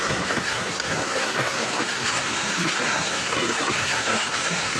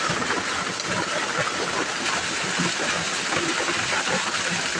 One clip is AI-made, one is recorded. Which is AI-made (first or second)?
first